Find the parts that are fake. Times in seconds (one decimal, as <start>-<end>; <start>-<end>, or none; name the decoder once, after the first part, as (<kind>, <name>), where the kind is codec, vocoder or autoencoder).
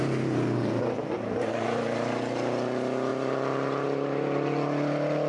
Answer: none